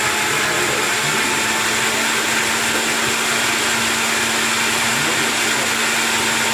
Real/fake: real